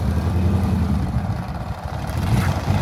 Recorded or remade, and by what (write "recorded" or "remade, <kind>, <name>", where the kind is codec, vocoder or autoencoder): remade, vocoder, BigVGAN v2